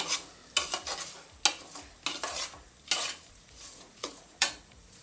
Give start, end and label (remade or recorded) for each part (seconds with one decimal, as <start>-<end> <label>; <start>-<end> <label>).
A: 0.0-0.4 remade; 0.4-3.3 recorded; 3.3-5.0 remade